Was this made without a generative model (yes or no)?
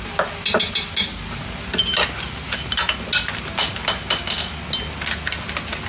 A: yes